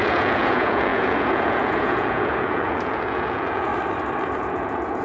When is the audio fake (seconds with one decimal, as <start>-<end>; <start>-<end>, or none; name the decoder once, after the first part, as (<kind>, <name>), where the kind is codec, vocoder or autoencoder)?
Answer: 0.0-3.7 (vocoder, Vocos); 4.4-5.0